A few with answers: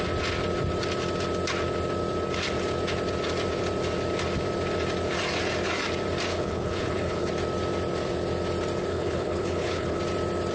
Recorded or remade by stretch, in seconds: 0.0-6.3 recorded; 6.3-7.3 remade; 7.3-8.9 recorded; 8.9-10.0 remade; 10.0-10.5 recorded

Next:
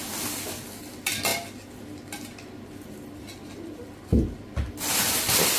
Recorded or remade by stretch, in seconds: 0.0-5.6 recorded